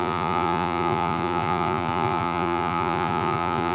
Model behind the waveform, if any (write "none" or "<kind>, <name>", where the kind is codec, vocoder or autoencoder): vocoder, Vocos